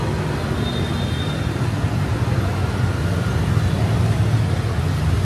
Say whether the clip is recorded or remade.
recorded